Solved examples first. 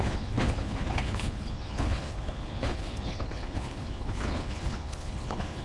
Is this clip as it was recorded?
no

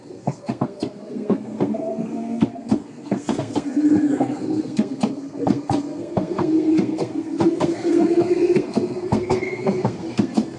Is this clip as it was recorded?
no